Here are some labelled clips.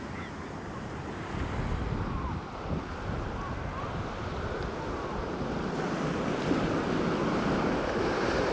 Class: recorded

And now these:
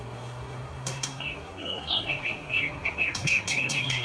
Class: remade